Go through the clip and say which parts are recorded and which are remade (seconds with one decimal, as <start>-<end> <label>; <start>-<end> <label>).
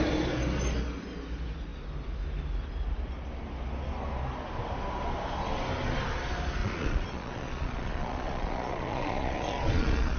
0.0-6.6 recorded; 6.6-10.2 remade